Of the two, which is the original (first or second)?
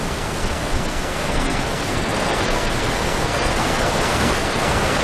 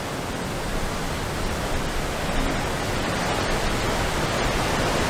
second